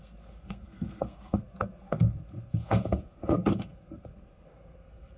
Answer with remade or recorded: remade